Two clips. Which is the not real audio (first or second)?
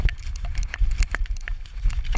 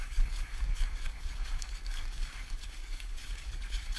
second